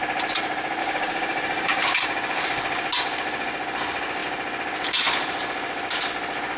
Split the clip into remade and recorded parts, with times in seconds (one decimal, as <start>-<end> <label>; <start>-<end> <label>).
0.0-0.8 recorded; 0.8-2.0 remade; 2.0-6.6 recorded